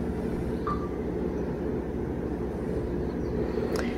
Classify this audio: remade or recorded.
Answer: recorded